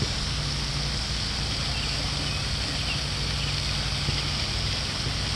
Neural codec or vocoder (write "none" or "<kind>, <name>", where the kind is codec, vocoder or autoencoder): none